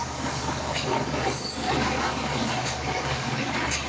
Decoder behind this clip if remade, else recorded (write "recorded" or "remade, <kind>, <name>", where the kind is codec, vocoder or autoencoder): remade, codec, DAC